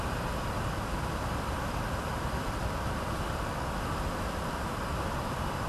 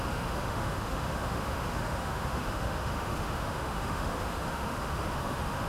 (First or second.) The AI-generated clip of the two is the second